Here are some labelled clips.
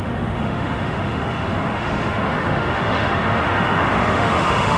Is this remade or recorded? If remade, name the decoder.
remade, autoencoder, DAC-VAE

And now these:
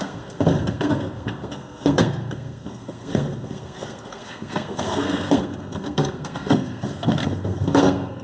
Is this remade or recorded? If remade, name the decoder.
remade, codec, SNAC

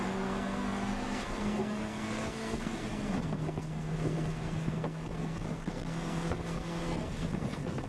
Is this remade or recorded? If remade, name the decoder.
remade, codec, SNAC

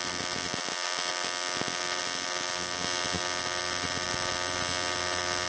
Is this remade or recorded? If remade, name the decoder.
recorded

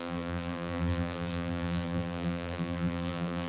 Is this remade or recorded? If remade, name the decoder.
remade, vocoder, BigVGAN v2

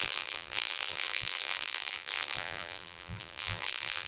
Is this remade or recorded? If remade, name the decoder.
remade, vocoder, BigVGAN v2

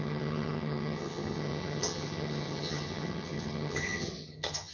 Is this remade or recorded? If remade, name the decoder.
remade, vocoder, HiFi-GAN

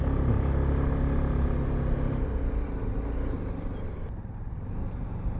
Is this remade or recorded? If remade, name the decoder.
recorded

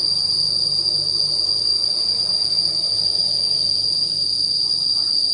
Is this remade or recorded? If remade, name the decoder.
recorded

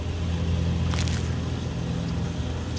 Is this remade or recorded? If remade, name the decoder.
recorded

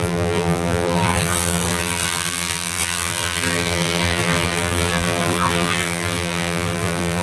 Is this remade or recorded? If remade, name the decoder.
remade, vocoder, BigVGAN v2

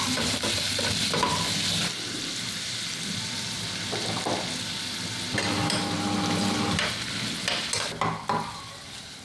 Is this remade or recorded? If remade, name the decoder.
recorded